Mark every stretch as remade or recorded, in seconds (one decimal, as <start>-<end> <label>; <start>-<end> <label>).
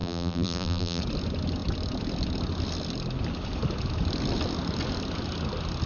0.0-1.0 remade; 1.0-5.9 recorded